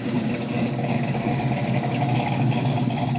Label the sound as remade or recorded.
remade